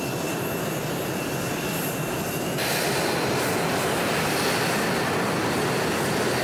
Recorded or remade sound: recorded